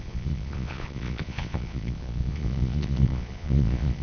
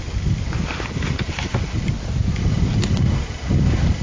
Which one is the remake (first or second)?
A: first